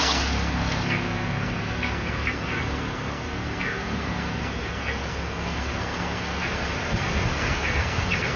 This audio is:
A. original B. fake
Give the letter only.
B